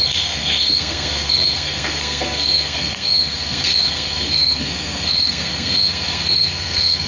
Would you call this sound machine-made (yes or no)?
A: yes